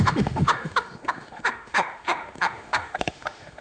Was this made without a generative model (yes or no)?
no